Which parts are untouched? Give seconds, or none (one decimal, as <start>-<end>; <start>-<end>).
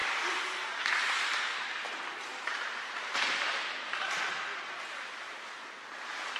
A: 0.0-6.4